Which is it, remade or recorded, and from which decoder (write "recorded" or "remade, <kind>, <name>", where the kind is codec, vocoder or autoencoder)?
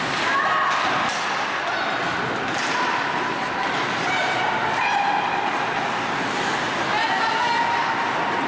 recorded